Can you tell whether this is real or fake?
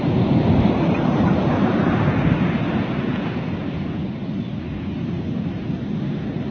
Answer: real